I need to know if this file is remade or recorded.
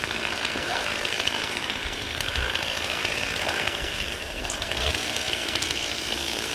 remade